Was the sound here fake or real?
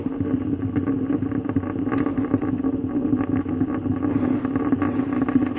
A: real